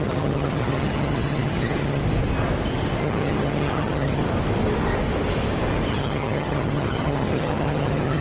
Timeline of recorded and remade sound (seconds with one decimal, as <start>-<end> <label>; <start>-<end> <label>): 0.0-2.0 remade; 2.0-3.0 recorded; 3.0-4.2 remade; 4.2-5.9 recorded; 5.9-8.2 remade